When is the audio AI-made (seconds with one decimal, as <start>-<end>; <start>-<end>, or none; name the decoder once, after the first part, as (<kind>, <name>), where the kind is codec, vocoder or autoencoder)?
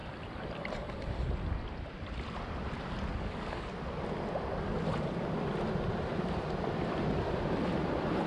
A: 3.1-3.7 (codec, DAC)